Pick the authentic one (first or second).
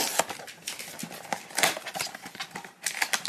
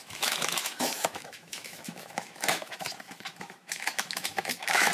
first